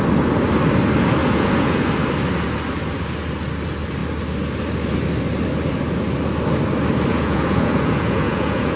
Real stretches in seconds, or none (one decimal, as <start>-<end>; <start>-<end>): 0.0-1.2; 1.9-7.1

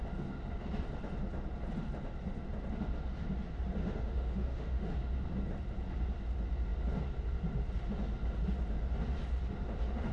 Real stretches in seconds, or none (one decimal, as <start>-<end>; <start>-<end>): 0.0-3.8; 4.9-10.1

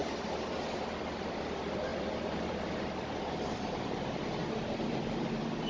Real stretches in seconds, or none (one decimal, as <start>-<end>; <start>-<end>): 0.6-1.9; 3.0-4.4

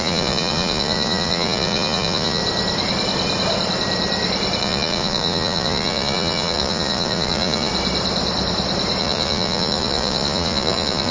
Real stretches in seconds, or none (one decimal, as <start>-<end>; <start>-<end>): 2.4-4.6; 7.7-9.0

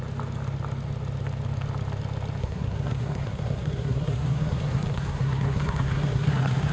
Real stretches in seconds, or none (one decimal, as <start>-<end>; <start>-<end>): 0.0-2.4